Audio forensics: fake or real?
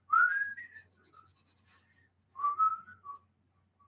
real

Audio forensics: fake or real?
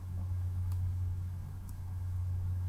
fake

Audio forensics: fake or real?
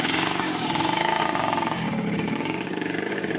fake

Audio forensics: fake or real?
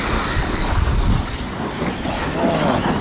real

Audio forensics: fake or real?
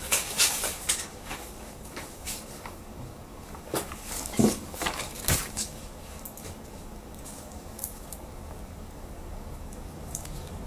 fake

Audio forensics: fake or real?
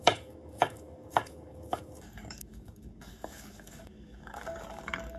fake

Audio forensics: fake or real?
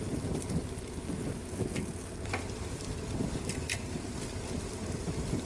real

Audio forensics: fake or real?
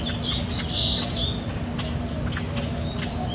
real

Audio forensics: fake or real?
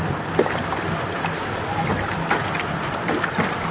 real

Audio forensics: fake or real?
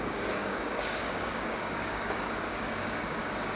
fake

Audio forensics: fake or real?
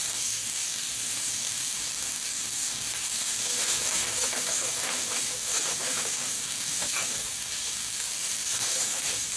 fake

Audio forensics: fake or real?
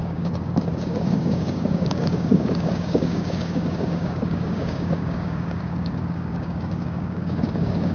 fake